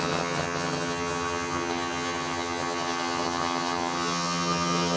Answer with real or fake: fake